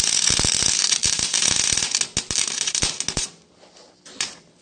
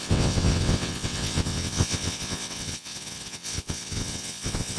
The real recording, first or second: first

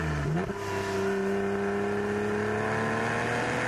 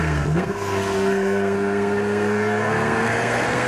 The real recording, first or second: first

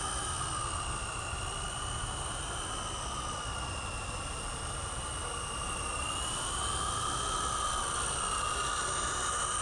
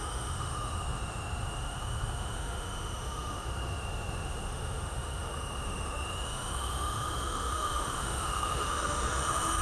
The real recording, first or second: first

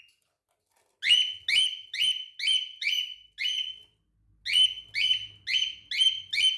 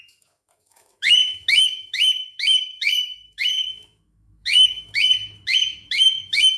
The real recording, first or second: first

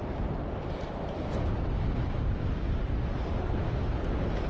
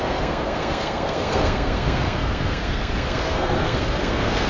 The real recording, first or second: first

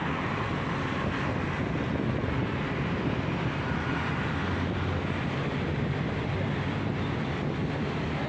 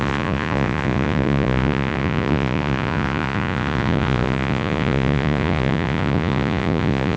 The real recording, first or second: first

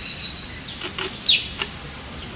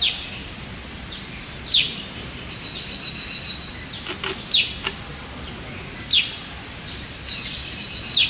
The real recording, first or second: second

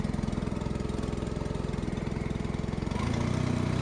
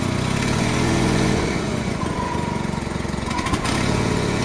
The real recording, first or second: first